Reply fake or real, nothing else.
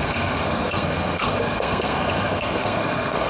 fake